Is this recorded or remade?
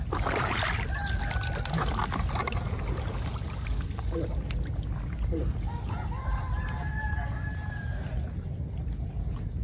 recorded